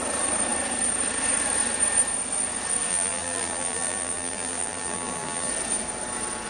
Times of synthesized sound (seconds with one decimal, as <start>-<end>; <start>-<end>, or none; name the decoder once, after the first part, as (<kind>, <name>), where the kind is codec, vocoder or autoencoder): 2.9-5.5 (vocoder, BigVGAN v2)